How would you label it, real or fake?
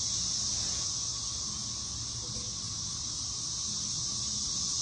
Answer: real